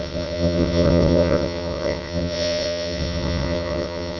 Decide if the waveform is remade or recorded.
remade